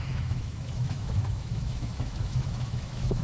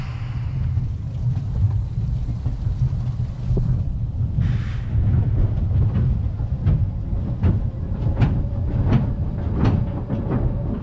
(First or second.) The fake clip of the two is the first